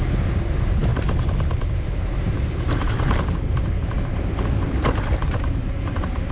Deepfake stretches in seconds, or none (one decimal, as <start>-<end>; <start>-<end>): 0.0-0.9; 1.7-3.8; 5.0-6.3